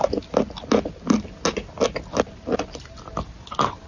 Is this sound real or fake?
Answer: real